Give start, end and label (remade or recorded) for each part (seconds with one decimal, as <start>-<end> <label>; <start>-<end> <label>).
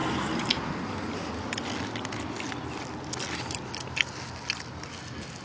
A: 0.0-5.4 recorded